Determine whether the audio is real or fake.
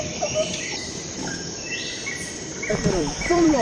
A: fake